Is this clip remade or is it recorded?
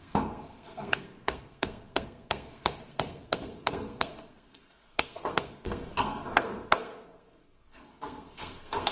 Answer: remade